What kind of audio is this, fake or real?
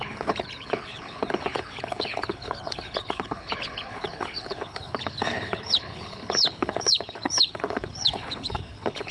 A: fake